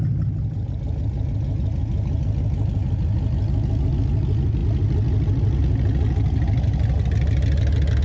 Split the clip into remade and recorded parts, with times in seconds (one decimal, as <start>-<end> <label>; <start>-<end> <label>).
0.0-8.0 recorded